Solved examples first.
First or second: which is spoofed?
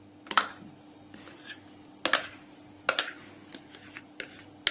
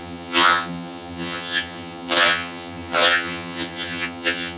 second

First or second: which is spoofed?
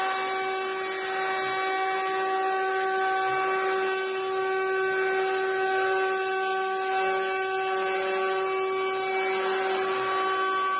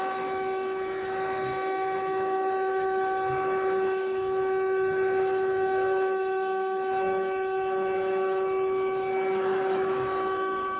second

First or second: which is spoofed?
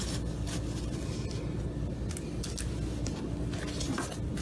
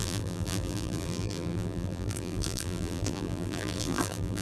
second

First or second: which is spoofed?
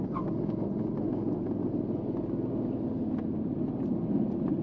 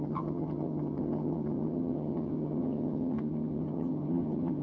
second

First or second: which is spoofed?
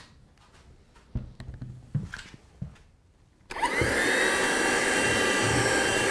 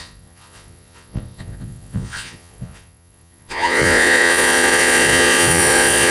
second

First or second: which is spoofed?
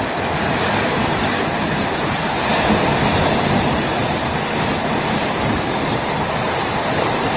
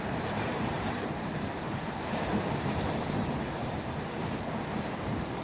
second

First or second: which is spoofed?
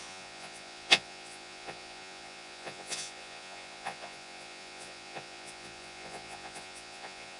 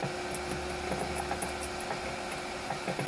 first